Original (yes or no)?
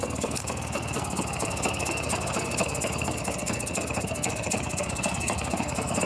no